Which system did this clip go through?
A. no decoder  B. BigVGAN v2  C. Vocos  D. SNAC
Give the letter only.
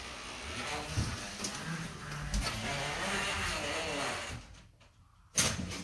A